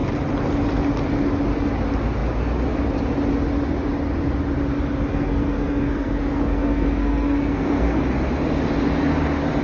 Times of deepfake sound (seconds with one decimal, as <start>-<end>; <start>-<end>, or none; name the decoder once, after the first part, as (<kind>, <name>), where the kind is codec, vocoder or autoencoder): 5.1-8.0 (codec, SNAC)